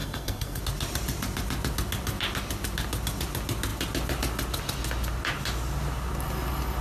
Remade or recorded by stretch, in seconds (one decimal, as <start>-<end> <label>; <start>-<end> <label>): 0.0-0.6 remade; 0.6-6.8 recorded